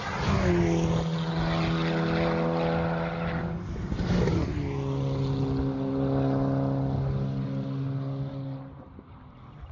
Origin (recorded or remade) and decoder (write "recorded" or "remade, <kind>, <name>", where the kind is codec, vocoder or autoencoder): recorded